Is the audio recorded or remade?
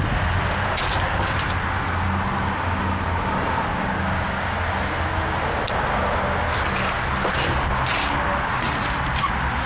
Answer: recorded